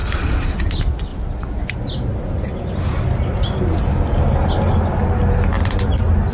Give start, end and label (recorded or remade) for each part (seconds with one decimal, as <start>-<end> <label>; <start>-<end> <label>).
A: 0.0-0.7 remade; 0.7-2.1 recorded; 2.1-3.6 remade; 3.6-6.3 recorded